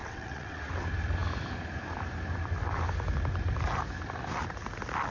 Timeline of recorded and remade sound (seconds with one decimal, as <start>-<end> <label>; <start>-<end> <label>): 0.0-0.7 remade; 0.7-5.1 recorded